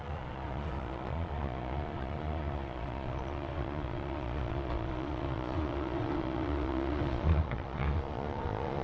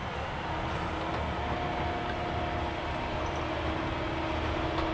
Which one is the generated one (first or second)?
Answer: first